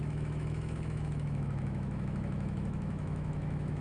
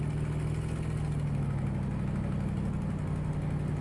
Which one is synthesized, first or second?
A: first